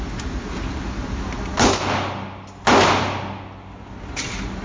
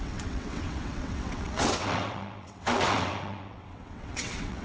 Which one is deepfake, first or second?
second